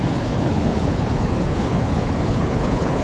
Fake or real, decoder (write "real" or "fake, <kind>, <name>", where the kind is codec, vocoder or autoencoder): fake, codec, HILCodec